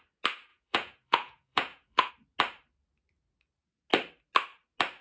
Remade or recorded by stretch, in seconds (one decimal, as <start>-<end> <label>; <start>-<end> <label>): 0.0-0.5 recorded; 0.5-2.1 remade; 2.1-5.0 recorded